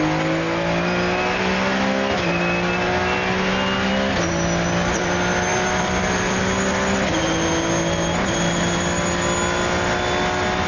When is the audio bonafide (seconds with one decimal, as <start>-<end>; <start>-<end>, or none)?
0.0-5.5; 6.3-10.7

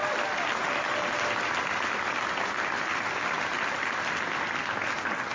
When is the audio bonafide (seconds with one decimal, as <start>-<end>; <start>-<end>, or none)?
0.0-5.3

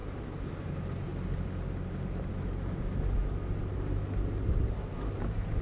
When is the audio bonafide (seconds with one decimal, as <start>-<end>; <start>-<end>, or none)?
1.1-4.5

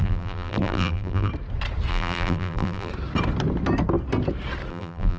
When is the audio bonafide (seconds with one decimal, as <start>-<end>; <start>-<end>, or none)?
1.3-1.9; 2.9-4.7

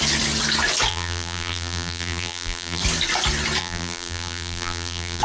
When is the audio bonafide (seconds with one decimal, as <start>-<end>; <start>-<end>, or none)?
0.0-0.9; 2.8-3.6

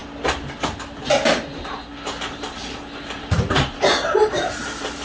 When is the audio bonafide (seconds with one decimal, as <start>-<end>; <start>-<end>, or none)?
0.0-2.3

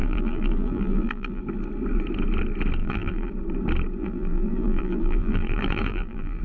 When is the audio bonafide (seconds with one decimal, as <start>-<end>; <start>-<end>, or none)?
1.4-2.8; 3.3-4.0